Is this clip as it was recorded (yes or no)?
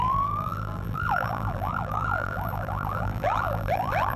no